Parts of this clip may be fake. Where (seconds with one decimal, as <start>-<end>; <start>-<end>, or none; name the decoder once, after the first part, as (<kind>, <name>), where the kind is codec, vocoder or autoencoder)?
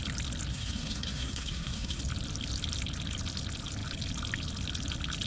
0.5-2.0 (codec, SNAC)